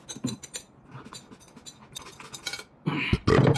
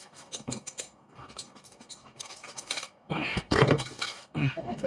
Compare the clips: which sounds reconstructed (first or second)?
second